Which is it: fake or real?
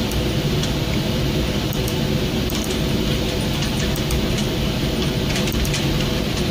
real